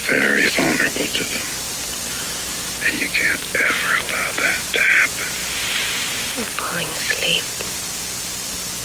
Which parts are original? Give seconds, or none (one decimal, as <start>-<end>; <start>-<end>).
0.0-8.8